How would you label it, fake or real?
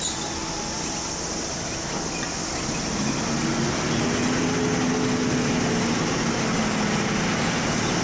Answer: real